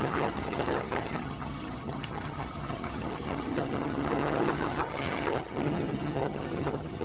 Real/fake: fake